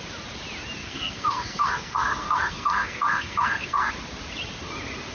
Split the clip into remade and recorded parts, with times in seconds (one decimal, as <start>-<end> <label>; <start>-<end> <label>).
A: 0.0-0.8 recorded; 0.8-3.9 remade; 3.9-5.1 recorded